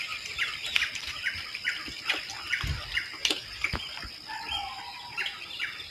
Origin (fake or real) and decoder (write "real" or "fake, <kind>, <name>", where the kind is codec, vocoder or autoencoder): real